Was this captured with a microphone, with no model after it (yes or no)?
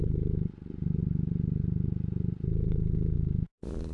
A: yes